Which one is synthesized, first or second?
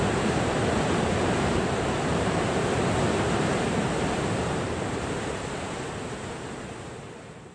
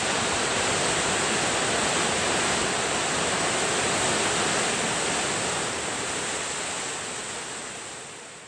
first